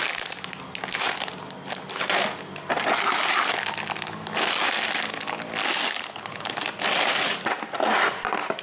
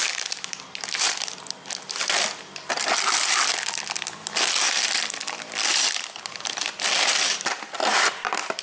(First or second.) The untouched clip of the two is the first